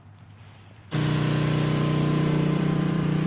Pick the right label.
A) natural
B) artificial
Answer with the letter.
B